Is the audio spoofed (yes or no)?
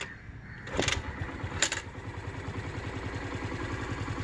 no